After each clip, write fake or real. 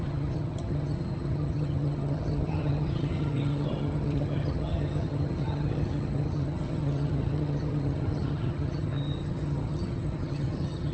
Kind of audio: fake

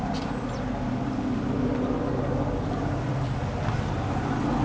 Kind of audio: real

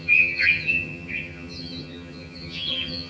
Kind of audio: fake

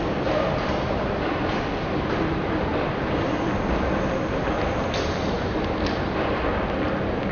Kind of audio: real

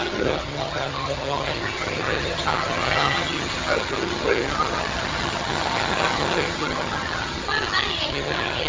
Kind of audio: fake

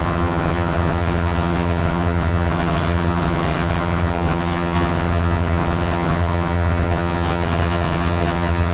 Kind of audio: fake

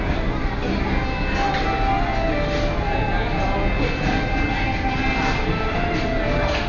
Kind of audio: real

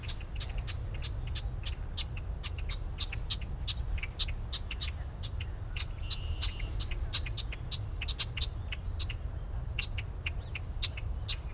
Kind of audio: real